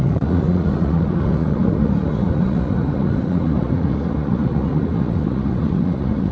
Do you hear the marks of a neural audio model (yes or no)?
yes